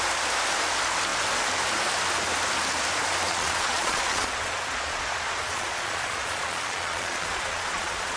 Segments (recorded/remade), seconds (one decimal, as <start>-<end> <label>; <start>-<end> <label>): 0.0-3.3 recorded; 3.3-8.2 remade